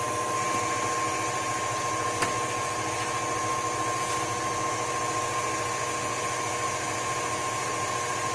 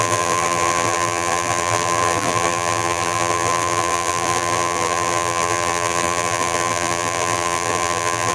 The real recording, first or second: first